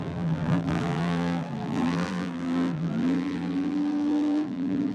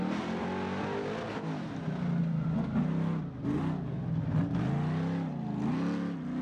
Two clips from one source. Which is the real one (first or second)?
second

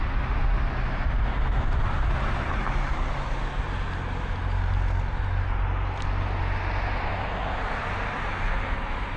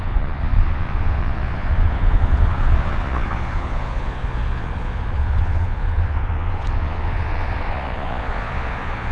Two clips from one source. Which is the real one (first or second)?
first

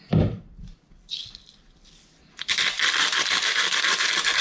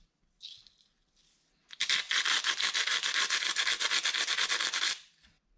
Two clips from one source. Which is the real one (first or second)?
second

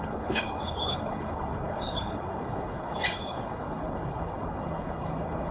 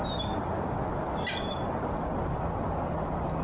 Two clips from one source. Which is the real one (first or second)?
second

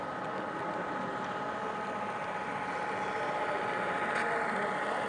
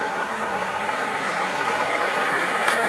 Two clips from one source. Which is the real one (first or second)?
first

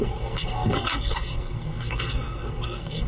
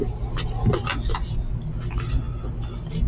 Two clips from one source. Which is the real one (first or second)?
second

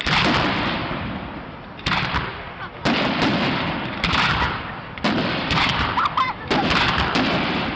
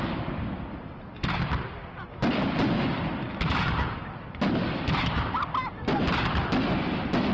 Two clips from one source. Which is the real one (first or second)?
second